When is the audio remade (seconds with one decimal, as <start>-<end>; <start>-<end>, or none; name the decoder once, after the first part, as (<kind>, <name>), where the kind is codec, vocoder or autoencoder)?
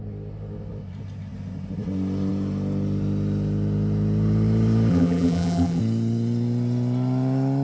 4.9-5.8 (vocoder, BigVGAN v2)